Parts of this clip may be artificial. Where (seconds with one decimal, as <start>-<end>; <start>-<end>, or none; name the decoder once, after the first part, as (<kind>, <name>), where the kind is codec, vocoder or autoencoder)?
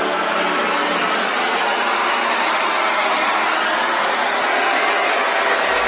1.0-1.9 (vocoder, Vocos)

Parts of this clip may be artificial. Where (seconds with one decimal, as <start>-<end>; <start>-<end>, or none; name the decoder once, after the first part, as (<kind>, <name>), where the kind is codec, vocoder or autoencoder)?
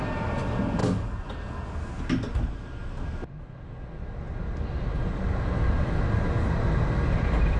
none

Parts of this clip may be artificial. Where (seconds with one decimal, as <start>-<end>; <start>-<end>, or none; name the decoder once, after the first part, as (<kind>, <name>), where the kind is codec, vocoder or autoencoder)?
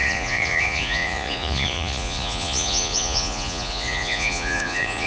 0.0-5.1 (vocoder, Vocos)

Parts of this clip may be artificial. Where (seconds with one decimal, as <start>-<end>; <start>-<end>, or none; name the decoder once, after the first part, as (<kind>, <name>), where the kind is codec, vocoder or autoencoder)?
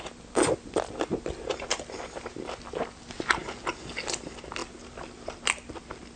none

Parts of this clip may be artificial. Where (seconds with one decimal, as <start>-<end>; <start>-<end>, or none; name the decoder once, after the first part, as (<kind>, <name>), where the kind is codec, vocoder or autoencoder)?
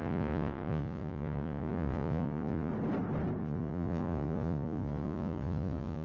0.0-2.7 (vocoder, Vocos); 3.4-6.0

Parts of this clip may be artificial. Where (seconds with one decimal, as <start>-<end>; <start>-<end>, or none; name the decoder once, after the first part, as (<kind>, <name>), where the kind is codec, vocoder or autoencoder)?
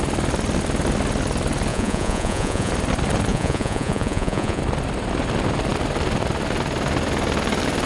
1.7-2.7 (vocoder, Vocos); 3.3-4.6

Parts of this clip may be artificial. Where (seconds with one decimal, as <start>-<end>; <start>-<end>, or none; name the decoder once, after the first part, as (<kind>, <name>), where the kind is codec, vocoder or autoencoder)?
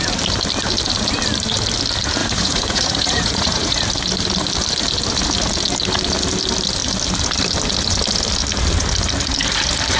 2.2-3.8 (vocoder, Vocos)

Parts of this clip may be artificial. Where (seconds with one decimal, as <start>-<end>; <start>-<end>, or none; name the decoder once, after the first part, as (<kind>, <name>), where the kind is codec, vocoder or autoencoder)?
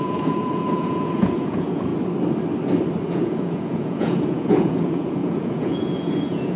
0.0-1.9 (vocoder, Vocos); 3.0-6.6